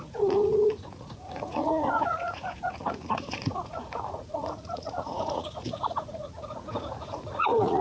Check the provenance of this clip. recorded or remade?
remade